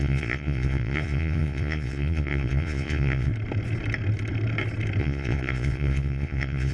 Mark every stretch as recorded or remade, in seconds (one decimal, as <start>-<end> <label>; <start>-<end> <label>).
0.0-3.3 remade; 3.3-5.0 recorded; 5.0-6.7 remade